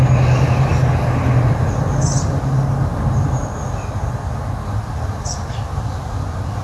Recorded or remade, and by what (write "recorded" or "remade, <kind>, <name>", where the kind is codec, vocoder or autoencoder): recorded